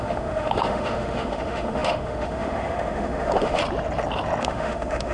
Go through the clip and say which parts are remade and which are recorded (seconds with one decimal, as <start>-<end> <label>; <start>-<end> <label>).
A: 0.0-3.6 remade; 3.6-4.4 recorded; 4.4-5.1 remade